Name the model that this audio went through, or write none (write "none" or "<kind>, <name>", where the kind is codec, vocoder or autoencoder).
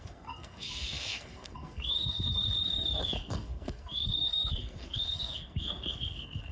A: codec, SNAC